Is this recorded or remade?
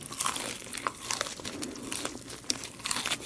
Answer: recorded